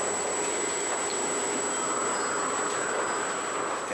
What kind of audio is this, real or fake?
real